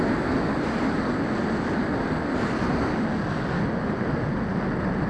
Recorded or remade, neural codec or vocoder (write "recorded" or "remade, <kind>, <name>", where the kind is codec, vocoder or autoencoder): recorded